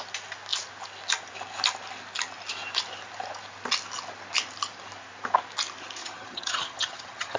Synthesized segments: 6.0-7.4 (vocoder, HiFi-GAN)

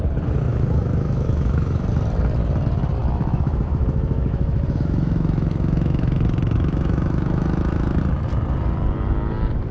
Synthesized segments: 0.5-1.9 (autoencoder, DAC-VAE); 3.0-8.0

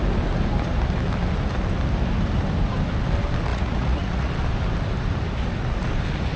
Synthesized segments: 3.5-4.3 (vocoder, Vocos)

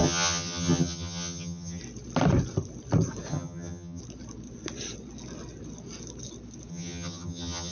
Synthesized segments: 0.0-1.8 (vocoder, HiFi-GAN); 3.3-4.0; 6.7-7.7